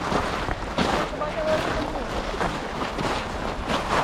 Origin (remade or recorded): recorded